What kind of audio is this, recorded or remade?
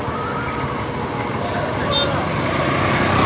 recorded